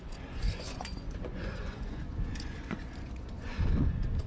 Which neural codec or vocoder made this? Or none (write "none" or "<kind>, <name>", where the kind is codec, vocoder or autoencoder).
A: vocoder, Vocos